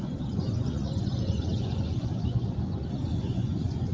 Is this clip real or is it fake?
fake